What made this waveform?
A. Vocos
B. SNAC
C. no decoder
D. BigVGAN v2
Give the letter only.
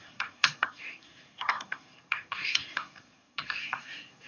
B